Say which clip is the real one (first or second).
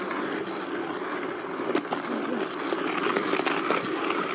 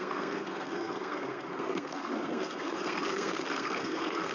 first